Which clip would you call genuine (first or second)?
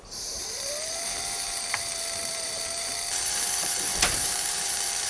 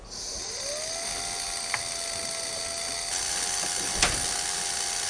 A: second